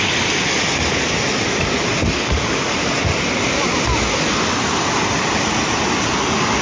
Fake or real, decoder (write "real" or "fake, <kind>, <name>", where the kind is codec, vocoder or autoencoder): real